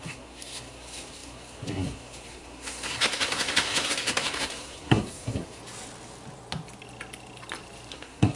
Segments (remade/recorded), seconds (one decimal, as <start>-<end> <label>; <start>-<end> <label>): 0.0-5.6 remade; 5.6-7.9 recorded; 7.9-8.4 remade